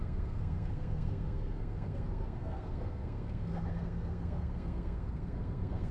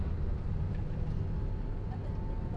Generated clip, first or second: first